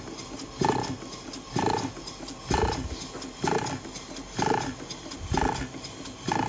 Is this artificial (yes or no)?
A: no